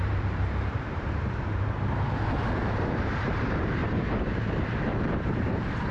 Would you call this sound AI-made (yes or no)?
yes